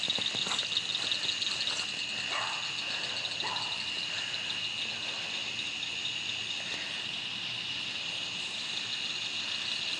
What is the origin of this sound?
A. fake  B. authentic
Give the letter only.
B